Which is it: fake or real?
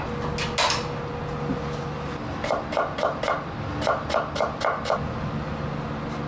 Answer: real